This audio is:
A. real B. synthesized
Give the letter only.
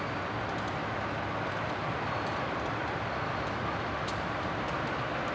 A